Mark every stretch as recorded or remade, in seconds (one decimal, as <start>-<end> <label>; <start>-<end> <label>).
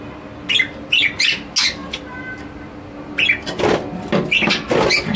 0.0-5.2 recorded